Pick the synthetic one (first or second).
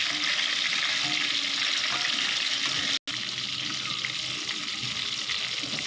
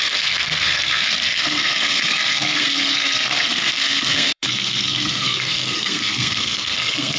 second